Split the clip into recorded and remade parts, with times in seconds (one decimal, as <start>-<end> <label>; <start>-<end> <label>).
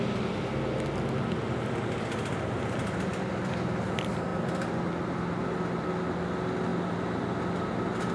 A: 0.0-8.1 recorded